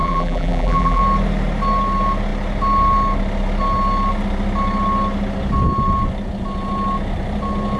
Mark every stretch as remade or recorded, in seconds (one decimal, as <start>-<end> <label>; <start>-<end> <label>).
0.0-1.0 remade; 1.0-7.8 recorded